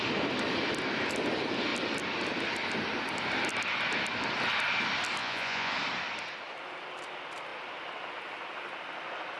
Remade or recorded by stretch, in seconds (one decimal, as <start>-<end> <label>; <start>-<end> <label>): 0.0-5.2 recorded; 5.2-5.7 remade; 5.7-9.4 recorded

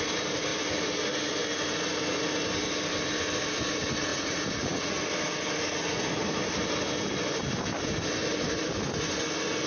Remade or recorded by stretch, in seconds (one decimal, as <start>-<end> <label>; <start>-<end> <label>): 0.0-4.1 recorded; 4.1-5.1 remade; 5.1-9.7 recorded

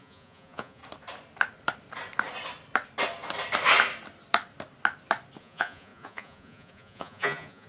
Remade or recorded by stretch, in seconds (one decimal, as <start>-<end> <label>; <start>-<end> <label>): 0.0-0.8 remade; 0.8-5.4 recorded; 5.4-7.7 remade

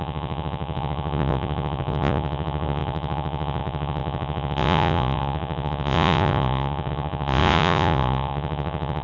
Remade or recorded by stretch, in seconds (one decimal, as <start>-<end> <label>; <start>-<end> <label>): 0.0-9.0 remade